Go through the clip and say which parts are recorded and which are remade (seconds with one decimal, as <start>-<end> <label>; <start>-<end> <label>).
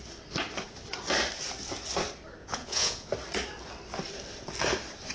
0.0-2.4 recorded; 2.4-3.1 remade; 3.1-5.1 recorded